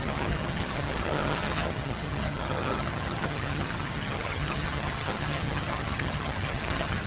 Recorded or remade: remade